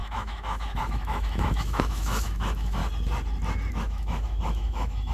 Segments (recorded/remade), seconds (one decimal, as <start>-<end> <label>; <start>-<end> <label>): 0.0-2.8 remade; 2.8-3.7 recorded; 3.7-5.1 remade